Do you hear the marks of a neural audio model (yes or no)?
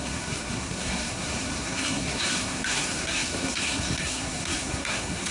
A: yes